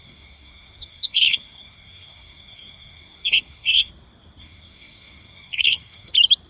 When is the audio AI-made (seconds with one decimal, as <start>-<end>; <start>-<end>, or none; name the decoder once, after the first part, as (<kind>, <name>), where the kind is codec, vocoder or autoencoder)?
0.0-3.9 (codec, SNAC); 4.4-6.1

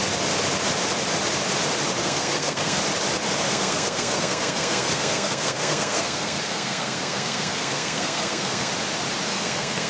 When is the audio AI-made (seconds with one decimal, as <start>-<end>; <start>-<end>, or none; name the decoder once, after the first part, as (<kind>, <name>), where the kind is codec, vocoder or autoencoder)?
2.0-2.8 (codec, SNAC); 3.5-8.7; 9.3-9.9

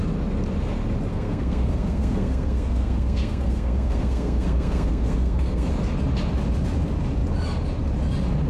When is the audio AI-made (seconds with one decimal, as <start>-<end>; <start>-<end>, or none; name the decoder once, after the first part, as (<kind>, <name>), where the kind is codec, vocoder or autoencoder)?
1.1-5.7 (codec, SNAC)

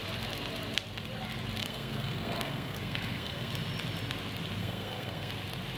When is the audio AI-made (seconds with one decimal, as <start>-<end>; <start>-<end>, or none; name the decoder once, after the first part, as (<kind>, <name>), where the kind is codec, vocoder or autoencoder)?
1.6-3.5 (codec, SNAC); 4.6-5.3

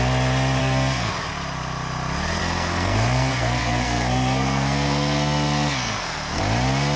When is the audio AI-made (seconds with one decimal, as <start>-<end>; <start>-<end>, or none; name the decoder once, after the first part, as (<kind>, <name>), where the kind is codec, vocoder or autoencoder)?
0.6-1.1 (codec, SNAC); 2.4-6.4